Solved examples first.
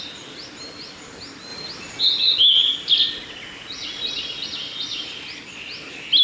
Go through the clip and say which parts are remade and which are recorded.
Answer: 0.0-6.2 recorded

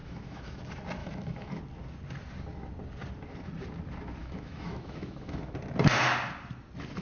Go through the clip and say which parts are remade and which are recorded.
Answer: 0.0-0.6 remade; 0.6-1.0 recorded; 1.0-1.6 remade; 1.6-4.2 recorded; 4.2-5.5 remade; 5.5-7.0 recorded

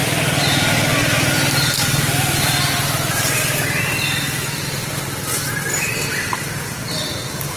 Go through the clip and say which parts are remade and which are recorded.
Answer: 0.0-7.6 recorded

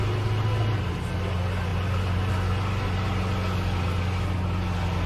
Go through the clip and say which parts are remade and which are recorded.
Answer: 0.0-5.1 recorded